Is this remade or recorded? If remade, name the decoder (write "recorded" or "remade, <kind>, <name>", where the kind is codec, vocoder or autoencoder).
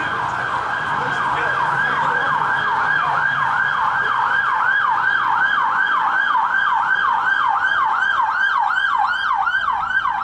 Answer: remade, vocoder, Vocos